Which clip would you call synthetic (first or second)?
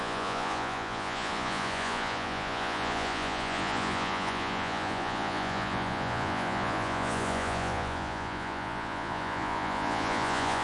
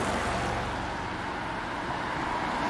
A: first